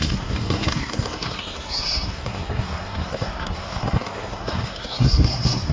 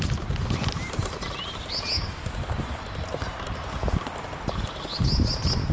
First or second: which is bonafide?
second